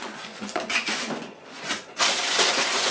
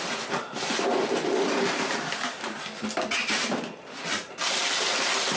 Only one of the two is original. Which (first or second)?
second